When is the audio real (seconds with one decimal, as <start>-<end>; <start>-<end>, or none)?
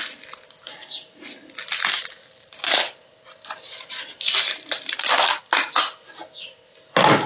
0.0-2.2; 5.4-7.3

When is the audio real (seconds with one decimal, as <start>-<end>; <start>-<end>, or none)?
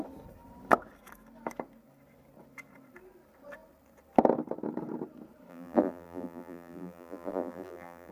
0.0-5.5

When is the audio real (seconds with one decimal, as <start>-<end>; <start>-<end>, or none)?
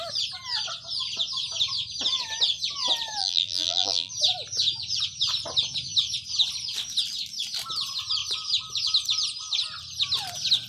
0.0-3.2; 4.1-10.7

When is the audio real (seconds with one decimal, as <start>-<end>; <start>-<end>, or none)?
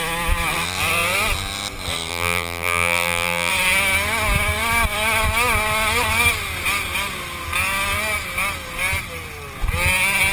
0.0-2.1; 3.5-10.3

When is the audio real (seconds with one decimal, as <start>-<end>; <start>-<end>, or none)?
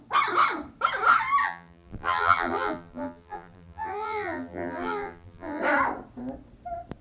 0.0-1.4; 5.6-7.0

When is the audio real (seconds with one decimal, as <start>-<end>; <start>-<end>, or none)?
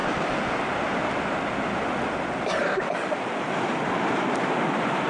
0.5-2.6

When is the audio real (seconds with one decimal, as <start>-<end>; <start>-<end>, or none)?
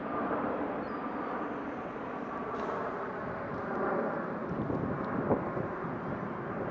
4.4-6.7